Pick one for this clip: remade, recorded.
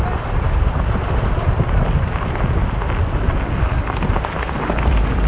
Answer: recorded